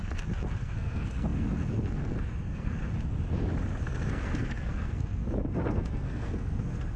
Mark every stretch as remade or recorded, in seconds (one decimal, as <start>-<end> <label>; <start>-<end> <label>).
0.0-2.8 remade; 2.8-3.8 recorded; 3.8-7.0 remade